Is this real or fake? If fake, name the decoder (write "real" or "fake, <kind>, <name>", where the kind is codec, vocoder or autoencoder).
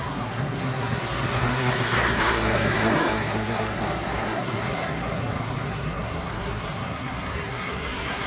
fake, codec, SNAC